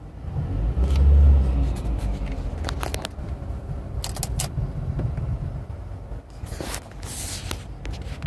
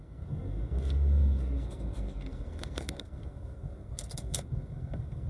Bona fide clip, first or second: first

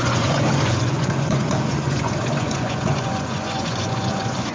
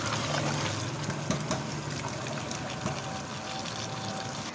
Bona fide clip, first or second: second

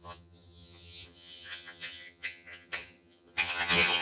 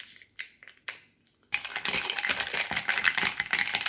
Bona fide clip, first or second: second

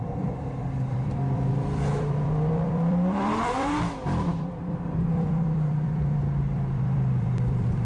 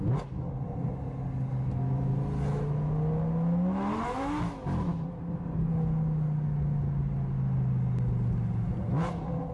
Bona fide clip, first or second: second